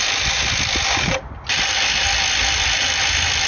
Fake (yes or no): no